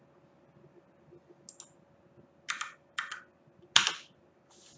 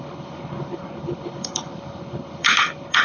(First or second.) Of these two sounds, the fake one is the second